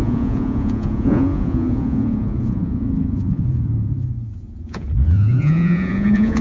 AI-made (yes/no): yes